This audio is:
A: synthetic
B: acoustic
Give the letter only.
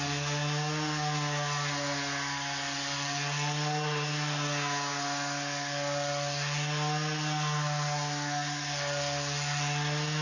B